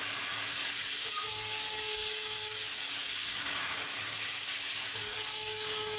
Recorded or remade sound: remade